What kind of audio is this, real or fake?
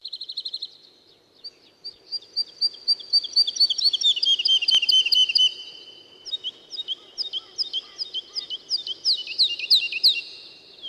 real